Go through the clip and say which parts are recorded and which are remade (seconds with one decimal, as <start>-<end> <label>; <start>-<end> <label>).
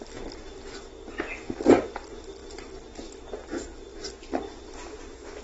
0.0-5.4 recorded